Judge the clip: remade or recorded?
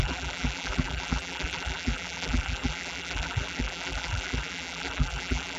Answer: remade